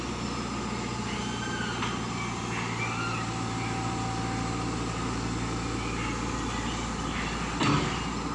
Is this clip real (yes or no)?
yes